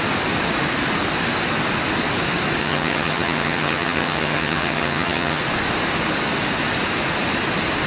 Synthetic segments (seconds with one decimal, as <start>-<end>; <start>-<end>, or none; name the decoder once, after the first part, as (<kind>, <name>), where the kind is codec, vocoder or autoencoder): 2.6-5.4 (vocoder, HiFi-GAN)